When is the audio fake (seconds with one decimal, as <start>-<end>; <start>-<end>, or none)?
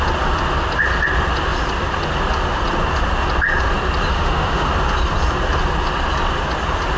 4.1-4.7